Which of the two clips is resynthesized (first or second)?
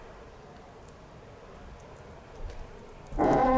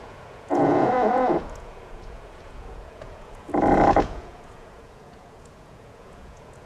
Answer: second